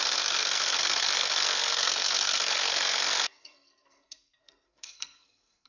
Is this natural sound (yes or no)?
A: no